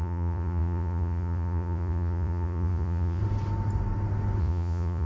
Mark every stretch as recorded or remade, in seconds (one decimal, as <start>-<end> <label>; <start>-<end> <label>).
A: 0.0-3.2 remade; 3.2-4.4 recorded; 4.4-5.1 remade